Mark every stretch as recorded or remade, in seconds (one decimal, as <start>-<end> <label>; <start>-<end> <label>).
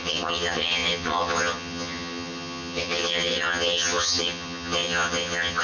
0.0-5.6 remade